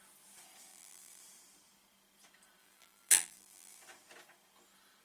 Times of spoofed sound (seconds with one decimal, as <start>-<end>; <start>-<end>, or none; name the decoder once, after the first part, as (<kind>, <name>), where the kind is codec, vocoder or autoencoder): 0.7-1.2 (vocoder, BigVGAN v2); 2.6-3.8